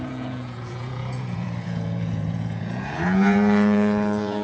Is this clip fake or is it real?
fake